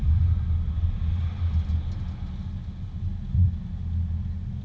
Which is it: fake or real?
real